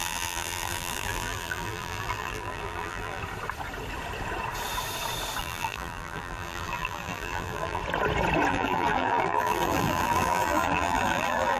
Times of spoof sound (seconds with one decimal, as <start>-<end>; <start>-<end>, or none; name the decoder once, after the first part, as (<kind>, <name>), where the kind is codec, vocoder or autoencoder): 0.0-3.2 (vocoder, BigVGAN v2); 5.4-7.8; 8.5-11.6